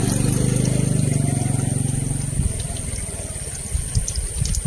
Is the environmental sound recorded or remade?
recorded